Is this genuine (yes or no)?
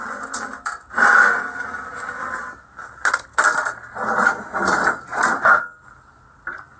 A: yes